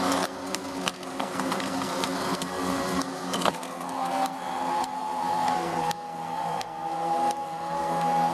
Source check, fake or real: fake